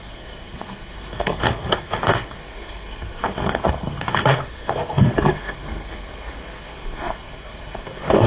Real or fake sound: fake